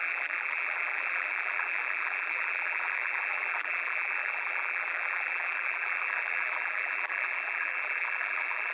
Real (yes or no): no